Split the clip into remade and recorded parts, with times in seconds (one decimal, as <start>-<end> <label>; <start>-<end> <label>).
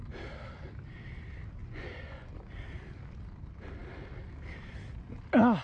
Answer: 0.0-1.6 recorded; 1.6-2.5 remade; 2.5-5.6 recorded